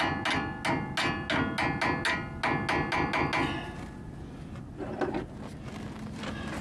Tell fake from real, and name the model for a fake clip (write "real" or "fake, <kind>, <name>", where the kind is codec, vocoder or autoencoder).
real